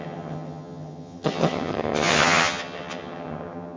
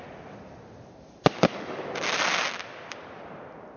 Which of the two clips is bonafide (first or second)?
second